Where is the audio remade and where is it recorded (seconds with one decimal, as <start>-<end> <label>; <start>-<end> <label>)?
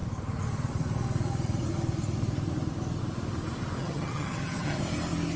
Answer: 0.0-3.8 recorded; 3.8-4.8 remade; 4.8-5.4 recorded